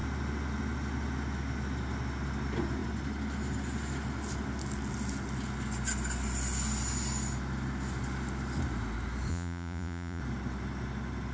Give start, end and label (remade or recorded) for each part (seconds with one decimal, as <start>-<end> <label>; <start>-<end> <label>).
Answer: 0.0-9.3 recorded; 9.3-10.2 remade; 10.2-11.3 recorded